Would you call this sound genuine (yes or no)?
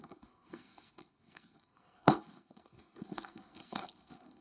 no